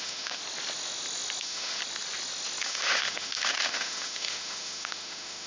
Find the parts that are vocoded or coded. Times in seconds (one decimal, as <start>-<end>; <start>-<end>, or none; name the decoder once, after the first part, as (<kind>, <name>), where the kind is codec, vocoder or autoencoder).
0.0-0.4 (autoencoder, DAC-VAE); 1.4-1.8; 2.6-5.5